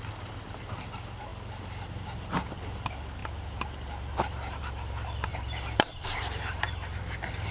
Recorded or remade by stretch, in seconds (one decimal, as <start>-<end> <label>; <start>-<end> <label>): 0.0-3.2 recorded; 3.2-4.6 remade; 4.6-5.3 recorded; 5.3-6.2 remade; 6.2-7.5 recorded